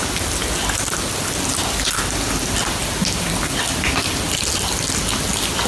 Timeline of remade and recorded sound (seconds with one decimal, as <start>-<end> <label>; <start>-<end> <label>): 0.0-5.7 recorded